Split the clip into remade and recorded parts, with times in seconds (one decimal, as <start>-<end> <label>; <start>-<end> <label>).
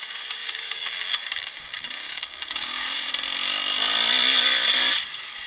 0.0-0.4 recorded; 0.4-3.1 remade; 3.1-5.5 recorded